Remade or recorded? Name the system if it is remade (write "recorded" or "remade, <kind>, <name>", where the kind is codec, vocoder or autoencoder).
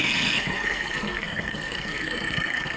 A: remade, codec, SNAC